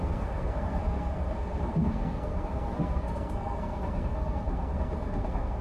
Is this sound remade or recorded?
remade